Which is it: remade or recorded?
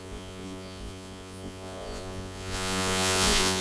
remade